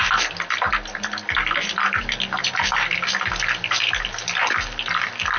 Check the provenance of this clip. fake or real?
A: real